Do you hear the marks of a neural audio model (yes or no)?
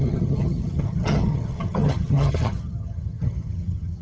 yes